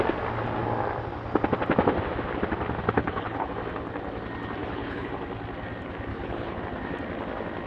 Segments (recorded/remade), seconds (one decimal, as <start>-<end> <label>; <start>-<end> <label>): 0.0-3.0 recorded; 3.0-3.5 remade; 3.5-4.6 recorded; 4.6-5.1 remade; 5.1-6.1 recorded; 6.1-6.6 remade; 6.6-7.7 recorded